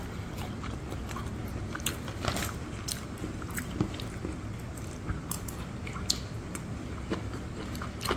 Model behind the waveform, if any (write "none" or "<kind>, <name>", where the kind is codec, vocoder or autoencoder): none